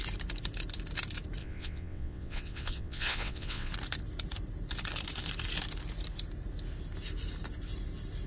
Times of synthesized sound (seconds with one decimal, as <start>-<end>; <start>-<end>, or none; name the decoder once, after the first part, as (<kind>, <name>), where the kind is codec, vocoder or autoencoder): 1.4-3.7 (vocoder, WaveNeXt)